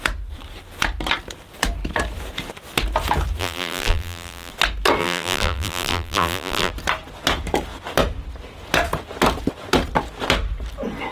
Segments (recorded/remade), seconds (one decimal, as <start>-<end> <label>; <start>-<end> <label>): 0.0-3.4 recorded; 3.4-4.5 remade; 4.5-5.0 recorded; 5.0-6.7 remade; 6.7-11.1 recorded